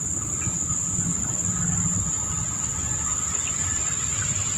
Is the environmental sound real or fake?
real